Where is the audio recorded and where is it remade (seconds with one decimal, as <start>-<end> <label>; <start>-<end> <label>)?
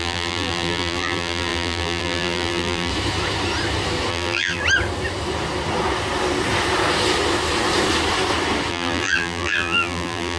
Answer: 0.0-2.9 remade; 2.9-4.1 recorded; 4.1-4.6 remade; 4.6-8.7 recorded; 8.7-10.4 remade